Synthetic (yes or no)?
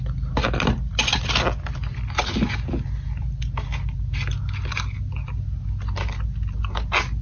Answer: no